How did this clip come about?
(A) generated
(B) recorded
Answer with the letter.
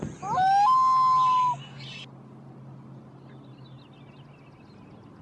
B